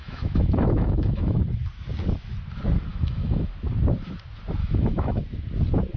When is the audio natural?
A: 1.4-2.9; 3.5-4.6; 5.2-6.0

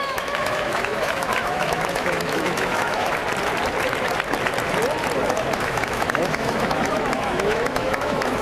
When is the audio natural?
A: 3.2-5.6

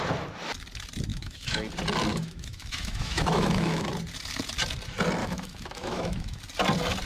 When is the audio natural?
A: 0.0-1.1; 1.7-2.1; 3.9-5.2; 6.4-7.1

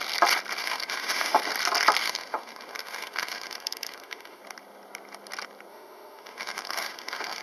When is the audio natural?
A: 0.0-0.6; 1.4-2.0; 4.4-5.7

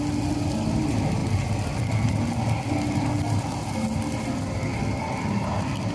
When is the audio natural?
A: 0.0-5.9